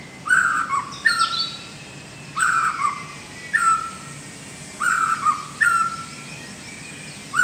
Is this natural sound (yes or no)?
yes